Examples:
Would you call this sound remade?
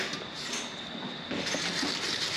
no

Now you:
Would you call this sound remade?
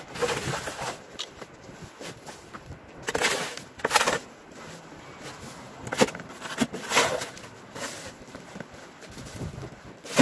no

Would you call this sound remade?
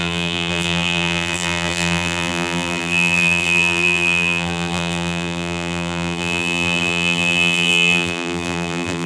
yes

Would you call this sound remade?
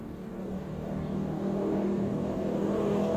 yes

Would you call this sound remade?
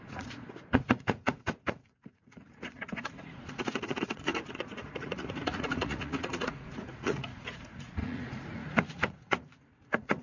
yes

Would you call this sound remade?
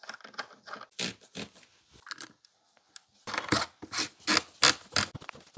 no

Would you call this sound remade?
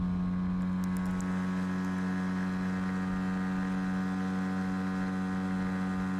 no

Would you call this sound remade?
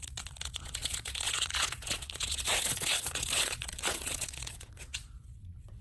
yes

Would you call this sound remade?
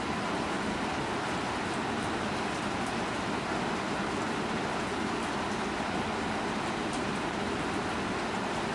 no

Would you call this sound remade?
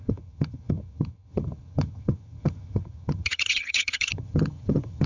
yes